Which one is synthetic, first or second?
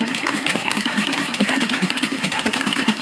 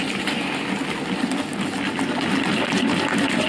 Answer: first